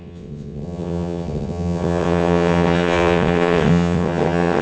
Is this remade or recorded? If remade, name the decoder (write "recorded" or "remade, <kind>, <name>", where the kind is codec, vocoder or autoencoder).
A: remade, vocoder, WaveNeXt